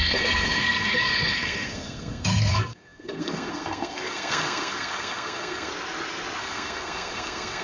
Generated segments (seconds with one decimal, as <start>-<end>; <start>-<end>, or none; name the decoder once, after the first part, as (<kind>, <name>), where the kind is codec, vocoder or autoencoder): 0.0-5.7 (codec, SNAC); 6.4-7.6